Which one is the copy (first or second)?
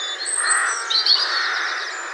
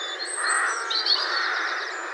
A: second